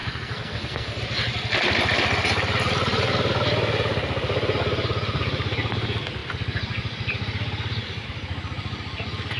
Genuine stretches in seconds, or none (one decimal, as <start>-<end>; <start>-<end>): 1.0-9.4